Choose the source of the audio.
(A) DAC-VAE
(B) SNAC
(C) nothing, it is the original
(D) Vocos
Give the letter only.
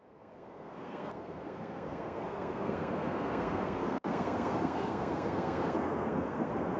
B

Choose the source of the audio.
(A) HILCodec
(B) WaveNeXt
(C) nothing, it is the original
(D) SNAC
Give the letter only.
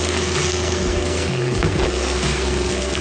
D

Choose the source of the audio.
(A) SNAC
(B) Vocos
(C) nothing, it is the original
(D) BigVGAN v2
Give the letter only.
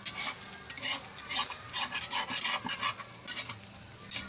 C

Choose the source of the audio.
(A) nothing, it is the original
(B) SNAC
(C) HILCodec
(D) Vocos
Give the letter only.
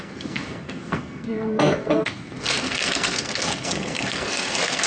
B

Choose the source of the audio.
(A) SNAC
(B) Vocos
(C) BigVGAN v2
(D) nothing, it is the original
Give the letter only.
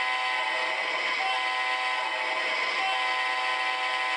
D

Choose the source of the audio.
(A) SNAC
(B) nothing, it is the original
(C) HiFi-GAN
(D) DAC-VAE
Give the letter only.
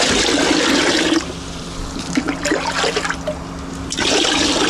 B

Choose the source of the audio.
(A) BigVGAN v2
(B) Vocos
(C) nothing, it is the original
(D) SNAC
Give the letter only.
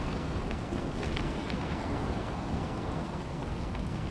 D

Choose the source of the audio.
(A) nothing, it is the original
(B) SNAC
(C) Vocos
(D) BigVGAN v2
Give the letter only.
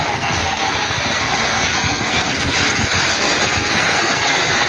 B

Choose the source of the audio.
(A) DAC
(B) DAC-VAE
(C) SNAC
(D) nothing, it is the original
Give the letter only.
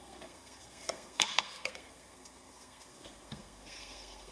C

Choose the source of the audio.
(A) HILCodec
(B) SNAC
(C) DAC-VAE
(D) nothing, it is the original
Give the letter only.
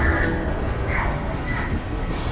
B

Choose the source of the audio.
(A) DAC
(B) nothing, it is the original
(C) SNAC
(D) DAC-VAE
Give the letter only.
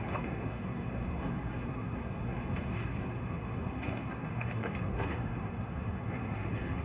C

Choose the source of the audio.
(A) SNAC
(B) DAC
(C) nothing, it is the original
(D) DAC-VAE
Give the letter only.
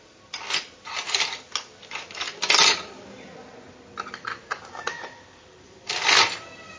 C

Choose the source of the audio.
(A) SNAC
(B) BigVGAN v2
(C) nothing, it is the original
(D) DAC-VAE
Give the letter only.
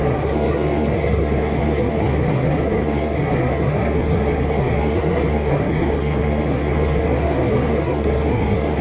A